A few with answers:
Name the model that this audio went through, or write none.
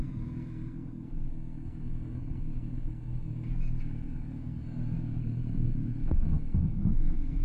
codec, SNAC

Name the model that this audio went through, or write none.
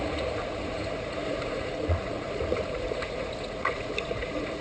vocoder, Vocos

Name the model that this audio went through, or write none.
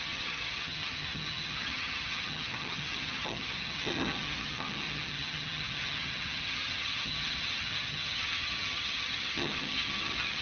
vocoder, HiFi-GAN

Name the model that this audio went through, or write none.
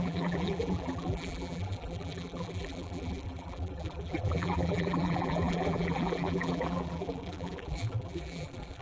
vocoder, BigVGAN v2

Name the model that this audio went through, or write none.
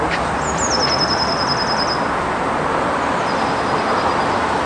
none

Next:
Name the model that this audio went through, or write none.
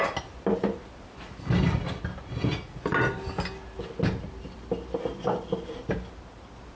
none